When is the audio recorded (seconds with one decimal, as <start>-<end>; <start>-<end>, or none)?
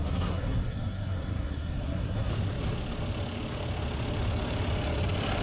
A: 2.3-5.4